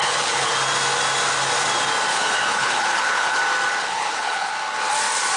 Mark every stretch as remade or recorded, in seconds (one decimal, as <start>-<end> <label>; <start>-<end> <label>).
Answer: 0.0-0.5 remade; 0.5-2.1 recorded; 2.1-3.4 remade; 3.4-3.8 recorded; 3.8-4.5 remade; 4.5-5.4 recorded